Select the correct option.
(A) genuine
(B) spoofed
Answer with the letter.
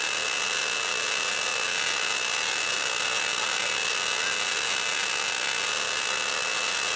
A